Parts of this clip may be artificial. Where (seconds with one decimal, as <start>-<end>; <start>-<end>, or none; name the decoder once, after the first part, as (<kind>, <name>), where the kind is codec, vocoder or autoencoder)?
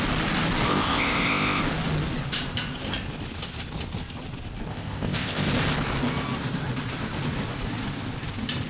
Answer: 0.7-1.6 (codec, ZipCodec); 4.7-5.5